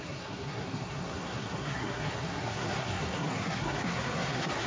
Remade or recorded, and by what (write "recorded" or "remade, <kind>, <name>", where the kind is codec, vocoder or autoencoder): remade, codec, SNAC